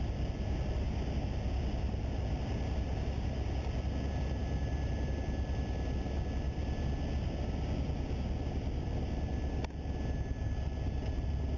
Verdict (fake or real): real